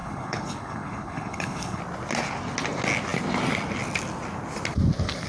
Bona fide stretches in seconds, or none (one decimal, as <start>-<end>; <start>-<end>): 1.8-5.3